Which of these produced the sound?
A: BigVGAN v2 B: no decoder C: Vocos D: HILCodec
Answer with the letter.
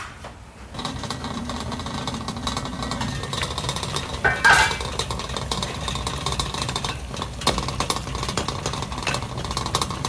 A